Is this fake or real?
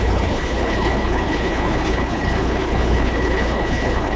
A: fake